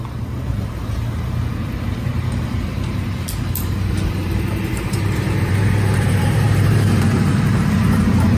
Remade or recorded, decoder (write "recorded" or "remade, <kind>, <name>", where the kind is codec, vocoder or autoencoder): remade, vocoder, BigVGAN v2